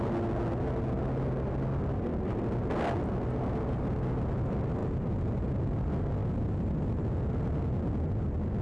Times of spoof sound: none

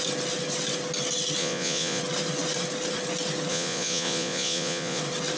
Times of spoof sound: 1.4-2.0 (vocoder, Vocos); 3.5-5.0

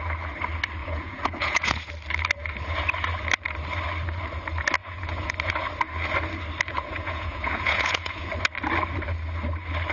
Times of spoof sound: 0.8-1.9 (vocoder, Vocos); 4.8-5.3; 6.7-8.3